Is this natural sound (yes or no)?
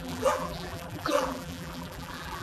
no